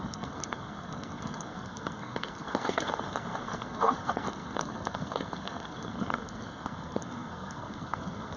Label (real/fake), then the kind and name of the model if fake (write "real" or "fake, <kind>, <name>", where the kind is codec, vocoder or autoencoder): fake, codec, SNAC